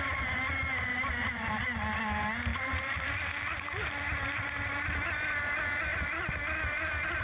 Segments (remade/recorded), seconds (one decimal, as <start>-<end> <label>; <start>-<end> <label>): 0.0-0.9 recorded; 0.9-1.5 remade; 1.5-2.5 recorded; 2.5-3.1 remade; 3.1-7.2 recorded